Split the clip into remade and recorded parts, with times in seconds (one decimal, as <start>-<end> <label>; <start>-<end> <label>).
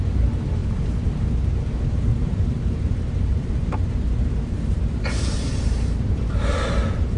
0.0-2.1 recorded; 2.1-6.4 remade; 6.4-7.2 recorded